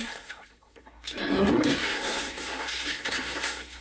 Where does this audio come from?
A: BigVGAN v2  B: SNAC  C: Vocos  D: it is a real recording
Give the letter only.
B